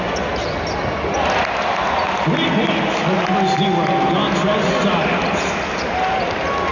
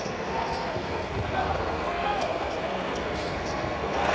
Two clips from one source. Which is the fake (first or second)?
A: second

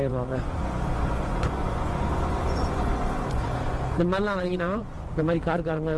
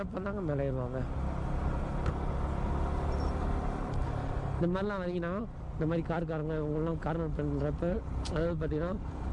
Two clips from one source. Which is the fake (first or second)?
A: first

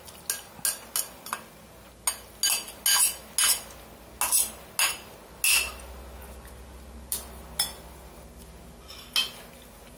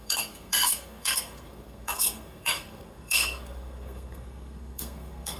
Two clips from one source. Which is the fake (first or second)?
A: second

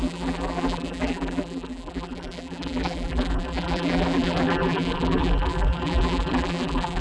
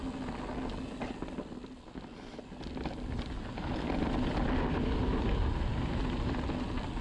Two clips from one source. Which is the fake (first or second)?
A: first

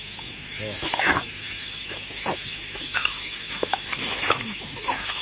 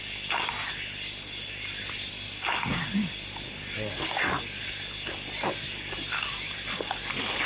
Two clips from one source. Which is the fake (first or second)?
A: first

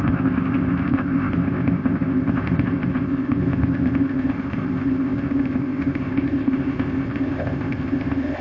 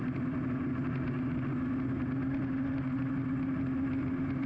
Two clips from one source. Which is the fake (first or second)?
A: first